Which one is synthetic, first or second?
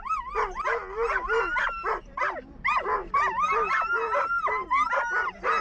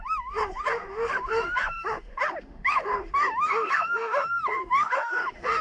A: second